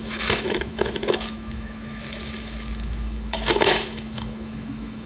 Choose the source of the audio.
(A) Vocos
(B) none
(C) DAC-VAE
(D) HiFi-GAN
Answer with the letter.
C